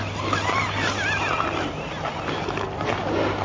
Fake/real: real